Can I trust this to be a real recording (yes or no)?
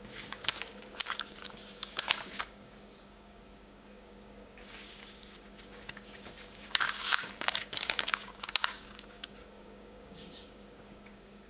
no